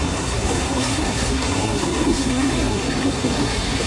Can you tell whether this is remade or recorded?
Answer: remade